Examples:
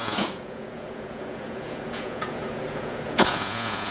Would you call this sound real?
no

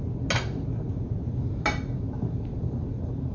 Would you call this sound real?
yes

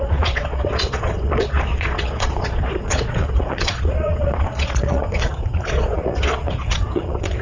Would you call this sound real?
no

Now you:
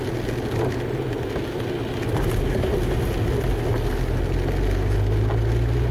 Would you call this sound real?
yes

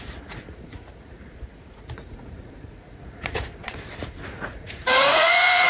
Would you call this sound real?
no